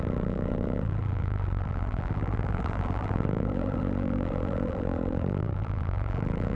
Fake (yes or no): yes